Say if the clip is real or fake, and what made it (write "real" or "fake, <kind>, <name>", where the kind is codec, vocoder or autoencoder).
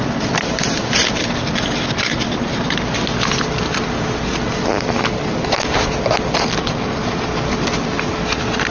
real